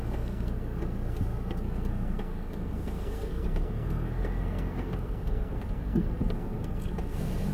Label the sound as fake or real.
fake